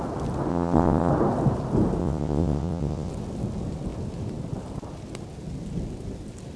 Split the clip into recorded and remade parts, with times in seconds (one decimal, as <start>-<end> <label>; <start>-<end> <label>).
0.0-0.5 recorded; 0.5-1.1 remade; 1.1-2.0 recorded; 2.0-3.1 remade; 3.1-6.6 recorded